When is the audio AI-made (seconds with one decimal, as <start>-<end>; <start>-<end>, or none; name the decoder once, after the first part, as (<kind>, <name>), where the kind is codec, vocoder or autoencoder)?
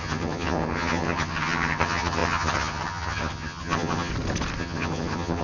0.0-4.1 (vocoder, HiFi-GAN); 4.6-5.4